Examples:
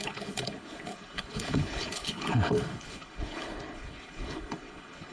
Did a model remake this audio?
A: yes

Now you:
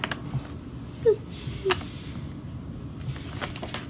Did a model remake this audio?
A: no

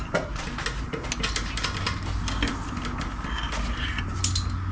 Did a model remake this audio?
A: no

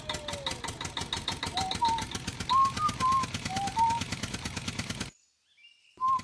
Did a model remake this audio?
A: no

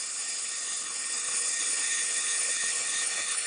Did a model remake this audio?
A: yes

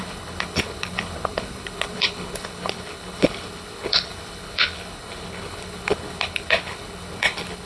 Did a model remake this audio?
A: yes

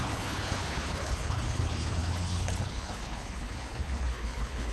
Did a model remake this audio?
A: yes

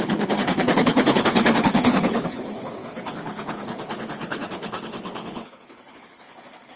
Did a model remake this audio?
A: yes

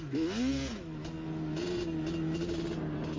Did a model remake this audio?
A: no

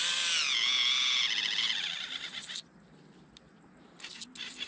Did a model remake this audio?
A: no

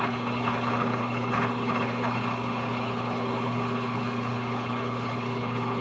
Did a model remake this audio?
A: yes